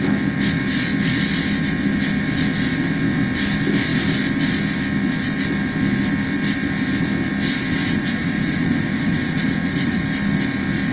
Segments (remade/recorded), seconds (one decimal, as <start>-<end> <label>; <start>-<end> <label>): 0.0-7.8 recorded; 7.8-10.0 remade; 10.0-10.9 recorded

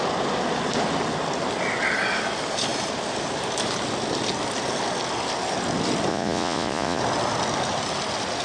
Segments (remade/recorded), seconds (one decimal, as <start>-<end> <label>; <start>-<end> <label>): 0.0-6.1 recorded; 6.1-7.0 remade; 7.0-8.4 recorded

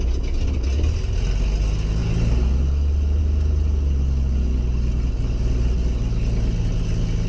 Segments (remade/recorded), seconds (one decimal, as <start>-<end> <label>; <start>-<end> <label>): 0.0-7.3 recorded

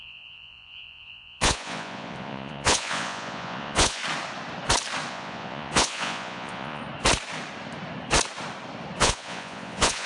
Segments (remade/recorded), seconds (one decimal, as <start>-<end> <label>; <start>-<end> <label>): 0.0-4.0 remade; 4.0-5.1 recorded; 5.1-6.8 remade; 6.8-9.0 recorded; 9.0-10.1 remade

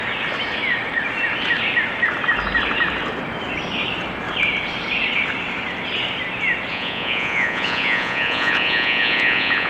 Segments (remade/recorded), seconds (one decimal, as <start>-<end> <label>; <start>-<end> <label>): 0.0-6.7 recorded; 6.7-9.7 remade

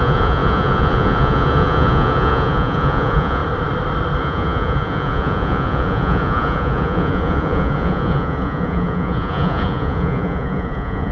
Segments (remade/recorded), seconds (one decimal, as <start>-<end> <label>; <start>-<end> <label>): 0.0-3.4 remade; 3.4-4.2 recorded; 4.2-11.1 remade

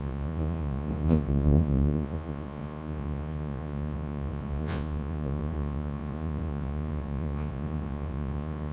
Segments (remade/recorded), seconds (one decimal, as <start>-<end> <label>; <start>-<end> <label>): 0.0-8.7 remade

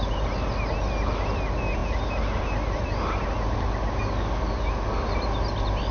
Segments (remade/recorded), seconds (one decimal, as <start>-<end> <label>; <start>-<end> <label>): 0.0-5.9 recorded